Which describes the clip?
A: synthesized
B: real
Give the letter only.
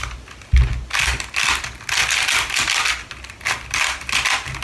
B